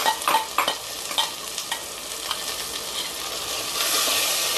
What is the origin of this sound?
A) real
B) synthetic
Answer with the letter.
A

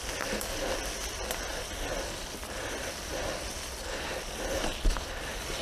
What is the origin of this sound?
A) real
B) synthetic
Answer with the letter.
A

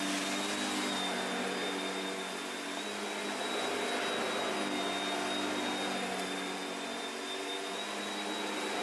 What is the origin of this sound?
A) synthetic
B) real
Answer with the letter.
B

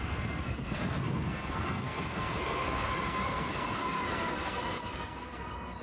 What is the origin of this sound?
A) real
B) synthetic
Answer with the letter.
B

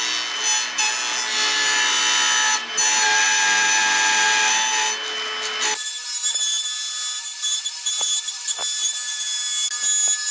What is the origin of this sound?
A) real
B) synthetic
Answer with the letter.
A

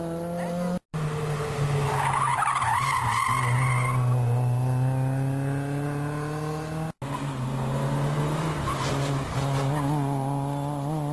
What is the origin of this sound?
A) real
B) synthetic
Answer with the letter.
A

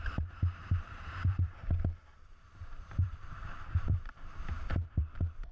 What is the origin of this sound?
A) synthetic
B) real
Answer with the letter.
A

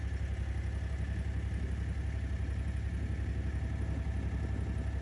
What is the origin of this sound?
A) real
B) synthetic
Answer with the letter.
A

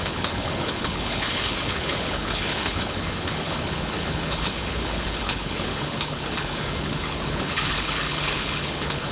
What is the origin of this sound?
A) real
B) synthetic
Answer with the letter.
B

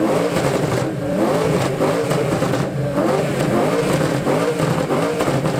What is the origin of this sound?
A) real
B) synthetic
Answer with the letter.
B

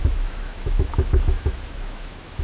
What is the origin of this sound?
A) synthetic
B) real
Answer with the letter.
A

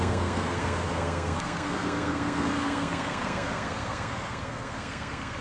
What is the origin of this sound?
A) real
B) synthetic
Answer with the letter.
B